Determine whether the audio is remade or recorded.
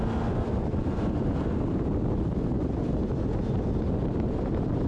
recorded